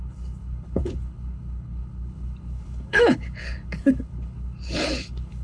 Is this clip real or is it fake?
fake